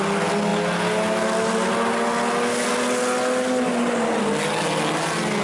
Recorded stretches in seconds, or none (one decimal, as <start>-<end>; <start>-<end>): 0.0-5.4

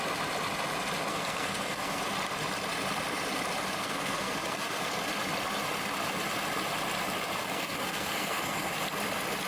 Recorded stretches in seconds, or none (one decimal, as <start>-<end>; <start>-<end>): 0.0-1.1; 2.0-3.8; 4.9-7.4; 8.7-9.5